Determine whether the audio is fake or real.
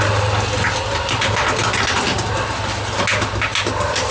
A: real